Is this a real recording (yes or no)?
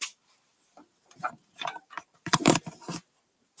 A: no